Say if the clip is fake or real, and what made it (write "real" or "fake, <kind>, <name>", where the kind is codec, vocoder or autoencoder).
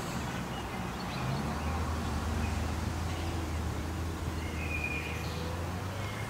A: real